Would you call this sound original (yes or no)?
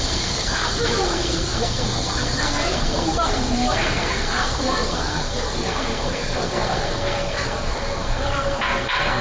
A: no